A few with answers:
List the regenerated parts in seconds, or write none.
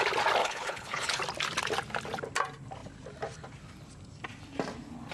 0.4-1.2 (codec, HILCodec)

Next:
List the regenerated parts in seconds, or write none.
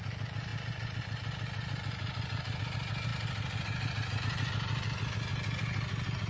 none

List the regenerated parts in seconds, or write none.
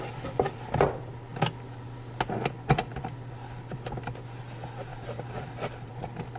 4.9-5.9 (vocoder, BigVGAN v2)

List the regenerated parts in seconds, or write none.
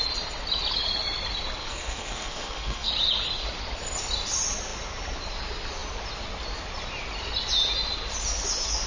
1.6-2.9 (codec, SNAC)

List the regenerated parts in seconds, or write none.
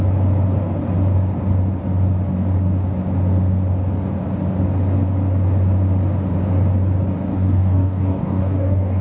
7.3-9.0 (codec, DAC)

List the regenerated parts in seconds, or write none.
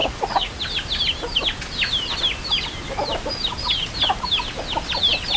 0.0-0.6 (vocoder, Vocos)